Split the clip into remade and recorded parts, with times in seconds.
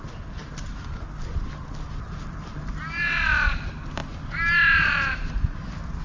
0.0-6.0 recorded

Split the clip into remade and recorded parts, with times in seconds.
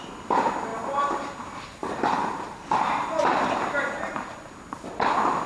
0.0-1.8 recorded; 1.8-3.1 remade; 3.1-5.5 recorded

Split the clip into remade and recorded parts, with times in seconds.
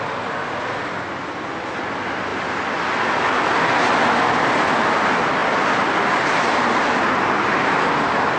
0.0-8.4 recorded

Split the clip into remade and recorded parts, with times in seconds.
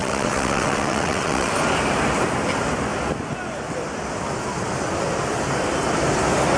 0.0-1.5 remade; 1.5-6.6 recorded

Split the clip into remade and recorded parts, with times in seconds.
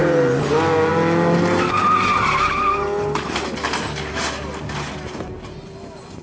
0.0-6.2 recorded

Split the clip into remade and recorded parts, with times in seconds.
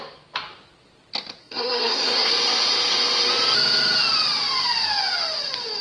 0.0-1.4 recorded; 1.4-2.3 remade; 2.3-5.8 recorded